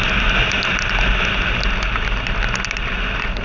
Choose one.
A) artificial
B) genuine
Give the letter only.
B